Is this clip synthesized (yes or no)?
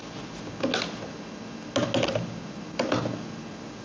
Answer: no